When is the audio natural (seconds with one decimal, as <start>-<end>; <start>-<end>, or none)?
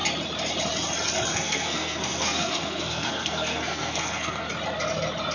0.0-1.3; 4.5-5.3